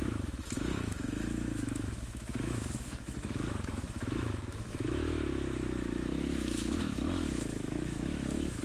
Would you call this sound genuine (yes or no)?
no